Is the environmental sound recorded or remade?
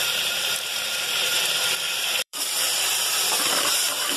remade